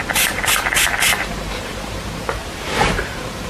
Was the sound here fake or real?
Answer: fake